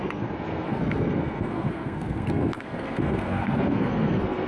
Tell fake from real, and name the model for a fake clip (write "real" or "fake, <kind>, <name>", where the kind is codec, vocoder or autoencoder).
fake, codec, SNAC